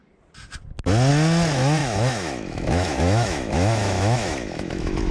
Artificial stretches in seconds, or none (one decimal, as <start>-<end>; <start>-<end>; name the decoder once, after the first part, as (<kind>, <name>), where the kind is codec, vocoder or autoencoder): 1.8-5.1 (autoencoder, DAC-VAE)